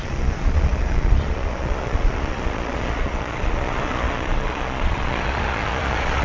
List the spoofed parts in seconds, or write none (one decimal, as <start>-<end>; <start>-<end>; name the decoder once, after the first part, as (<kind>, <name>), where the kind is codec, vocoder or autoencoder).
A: 0.0-6.2 (vocoder, Vocos)